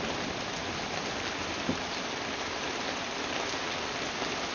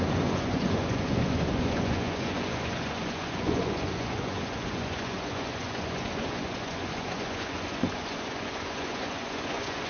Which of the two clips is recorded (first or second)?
first